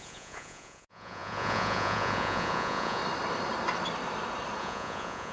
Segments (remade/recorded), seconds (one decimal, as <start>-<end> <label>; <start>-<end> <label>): 0.0-3.0 remade; 3.0-4.6 recorded; 4.6-5.3 remade